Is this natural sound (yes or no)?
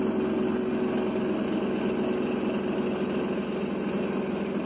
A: yes